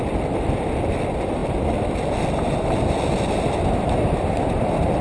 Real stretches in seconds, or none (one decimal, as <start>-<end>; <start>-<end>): 0.0-5.0